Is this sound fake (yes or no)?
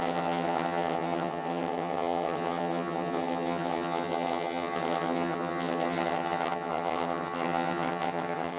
yes